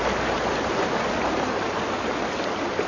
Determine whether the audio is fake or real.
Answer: real